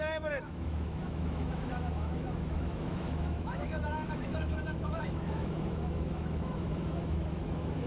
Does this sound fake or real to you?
fake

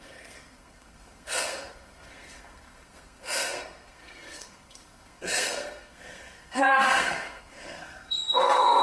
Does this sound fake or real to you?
fake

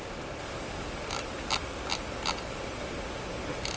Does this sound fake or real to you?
real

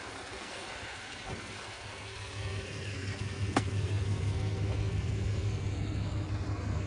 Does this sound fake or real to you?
fake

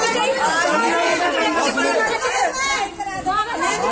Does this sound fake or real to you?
real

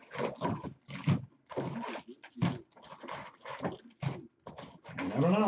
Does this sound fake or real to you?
real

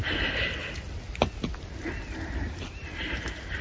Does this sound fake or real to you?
real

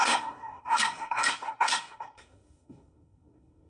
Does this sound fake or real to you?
fake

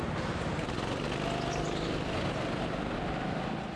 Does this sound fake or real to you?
real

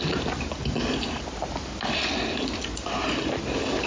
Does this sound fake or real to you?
real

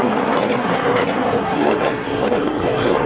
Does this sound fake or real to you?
fake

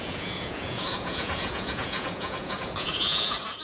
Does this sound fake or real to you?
fake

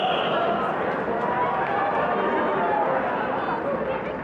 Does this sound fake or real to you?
real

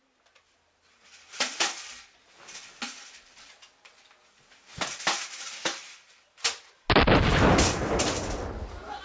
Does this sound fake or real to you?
real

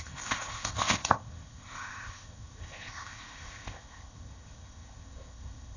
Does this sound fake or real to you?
fake